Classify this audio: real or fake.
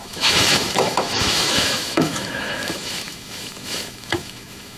fake